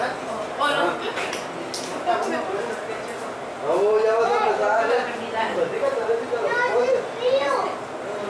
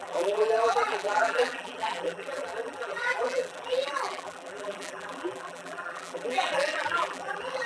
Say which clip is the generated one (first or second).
second